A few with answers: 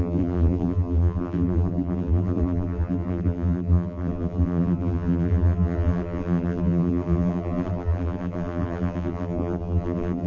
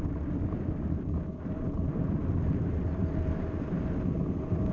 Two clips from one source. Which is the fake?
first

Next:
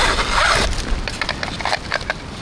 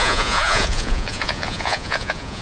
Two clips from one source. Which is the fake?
second